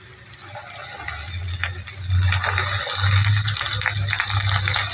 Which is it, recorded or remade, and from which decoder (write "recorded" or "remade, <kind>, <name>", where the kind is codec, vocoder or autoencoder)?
recorded